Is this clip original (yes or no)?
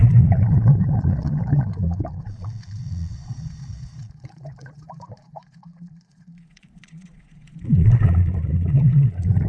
no